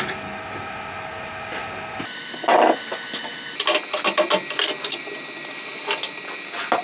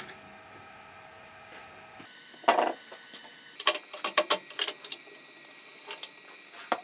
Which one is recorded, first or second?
first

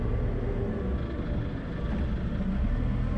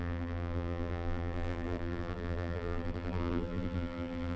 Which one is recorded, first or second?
first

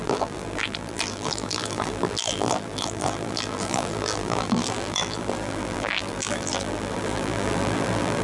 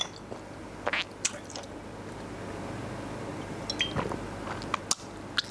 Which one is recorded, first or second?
second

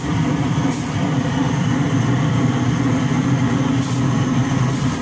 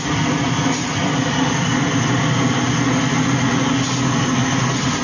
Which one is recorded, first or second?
second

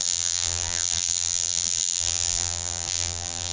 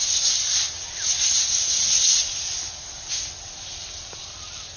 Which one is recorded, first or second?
second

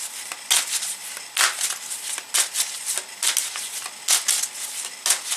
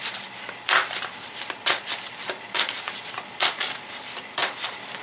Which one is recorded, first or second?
first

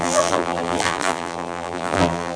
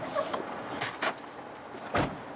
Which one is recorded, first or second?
second